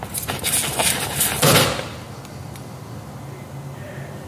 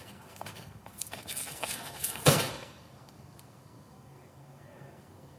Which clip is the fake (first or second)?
second